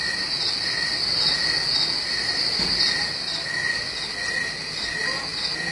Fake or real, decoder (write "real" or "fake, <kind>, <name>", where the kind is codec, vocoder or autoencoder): real